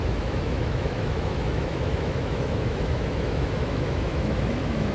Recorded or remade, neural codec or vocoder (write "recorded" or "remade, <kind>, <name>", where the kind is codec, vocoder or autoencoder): remade, autoencoder, DAC-VAE